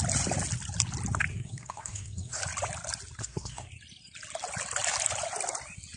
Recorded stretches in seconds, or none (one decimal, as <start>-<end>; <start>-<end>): 0.0-1.3; 2.4-3.2; 3.7-6.0